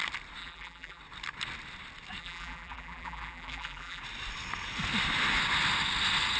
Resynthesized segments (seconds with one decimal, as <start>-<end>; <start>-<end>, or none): 0.4-1.0; 2.2-4.0